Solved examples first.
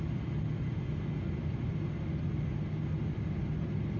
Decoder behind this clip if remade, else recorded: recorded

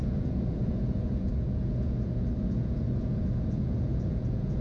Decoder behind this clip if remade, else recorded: remade, vocoder, Vocos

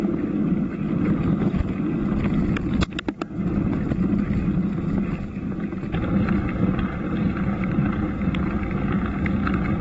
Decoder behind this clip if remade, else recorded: recorded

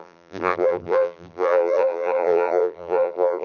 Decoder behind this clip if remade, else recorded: remade, vocoder, BigVGAN v2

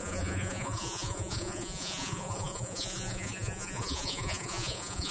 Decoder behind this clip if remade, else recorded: remade, vocoder, Vocos